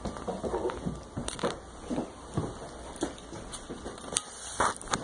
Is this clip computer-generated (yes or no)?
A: no